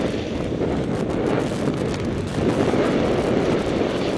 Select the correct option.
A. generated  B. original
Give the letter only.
B